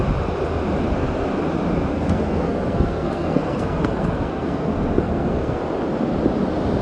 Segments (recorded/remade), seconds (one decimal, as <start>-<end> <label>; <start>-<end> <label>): 0.0-1.9 recorded; 1.9-5.6 remade; 5.6-6.8 recorded